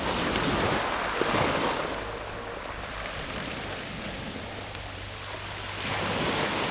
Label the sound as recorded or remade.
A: recorded